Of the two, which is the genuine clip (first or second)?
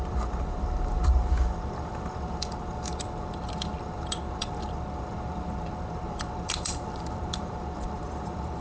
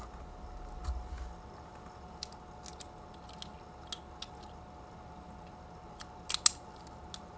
second